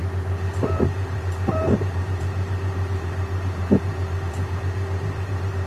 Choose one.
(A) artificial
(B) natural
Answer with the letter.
A